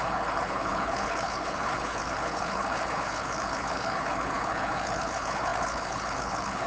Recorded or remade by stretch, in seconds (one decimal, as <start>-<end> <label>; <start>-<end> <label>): 0.0-6.7 remade